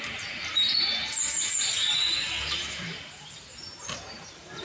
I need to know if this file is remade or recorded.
remade